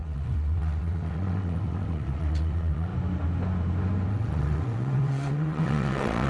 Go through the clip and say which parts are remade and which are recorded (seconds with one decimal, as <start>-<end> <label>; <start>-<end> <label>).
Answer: 0.0-2.9 remade; 2.9-4.1 recorded; 4.1-6.3 remade